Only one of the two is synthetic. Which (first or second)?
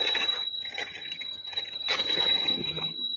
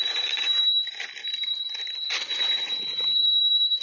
first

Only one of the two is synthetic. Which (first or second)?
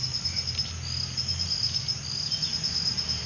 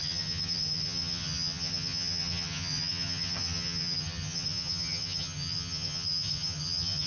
second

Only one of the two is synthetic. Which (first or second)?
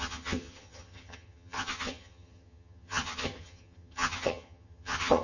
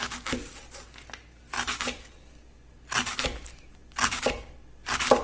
first